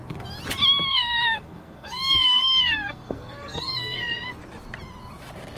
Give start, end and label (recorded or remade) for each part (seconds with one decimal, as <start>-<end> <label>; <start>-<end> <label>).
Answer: 0.0-0.9 recorded; 0.9-4.3 remade; 4.3-5.6 recorded